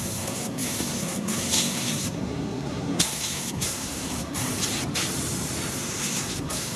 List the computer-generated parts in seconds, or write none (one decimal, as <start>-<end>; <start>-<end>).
0.0-4.5; 5.7-6.8